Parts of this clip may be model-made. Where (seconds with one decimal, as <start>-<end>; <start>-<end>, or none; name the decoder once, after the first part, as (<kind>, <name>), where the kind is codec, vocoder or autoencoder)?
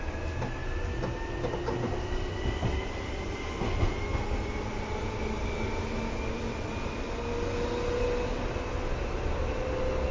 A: none